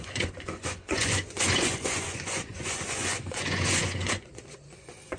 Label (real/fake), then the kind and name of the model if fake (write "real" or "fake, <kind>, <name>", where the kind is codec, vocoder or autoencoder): fake, vocoder, Vocos